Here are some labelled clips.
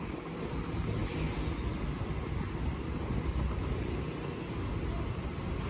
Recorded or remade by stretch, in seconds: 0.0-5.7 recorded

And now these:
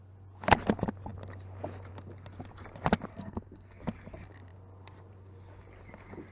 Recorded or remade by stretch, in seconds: 0.0-3.1 recorded; 3.1-3.8 remade; 3.8-6.3 recorded

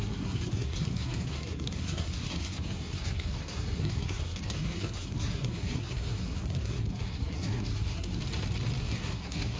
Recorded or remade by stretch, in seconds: 0.0-8.2 remade; 8.2-8.8 recorded; 8.8-9.6 remade

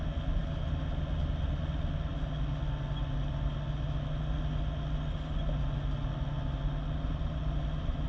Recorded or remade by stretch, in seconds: 0.0-8.1 recorded

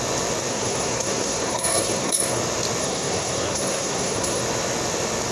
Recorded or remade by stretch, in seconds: 0.0-0.5 recorded; 0.5-2.4 remade; 2.4-2.8 recorded; 2.8-4.4 remade; 4.4-5.3 recorded

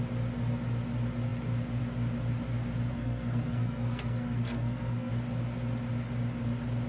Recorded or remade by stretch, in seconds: 0.0-2.9 recorded; 2.9-5.1 remade; 5.1-6.9 recorded